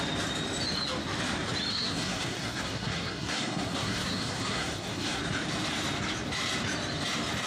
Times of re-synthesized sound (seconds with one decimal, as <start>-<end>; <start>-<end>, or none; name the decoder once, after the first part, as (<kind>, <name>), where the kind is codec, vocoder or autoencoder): 1.7-5.2 (codec, SNAC)